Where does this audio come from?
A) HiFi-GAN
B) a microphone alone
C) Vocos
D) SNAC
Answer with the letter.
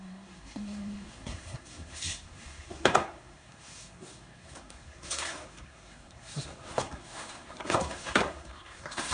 D